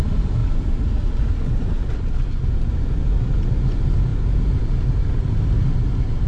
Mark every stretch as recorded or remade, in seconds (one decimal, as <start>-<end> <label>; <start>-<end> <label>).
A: 0.0-0.4 recorded; 0.4-1.9 remade; 1.9-6.3 recorded